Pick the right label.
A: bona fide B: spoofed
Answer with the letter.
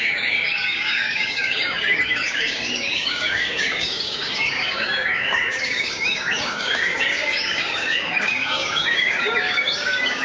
B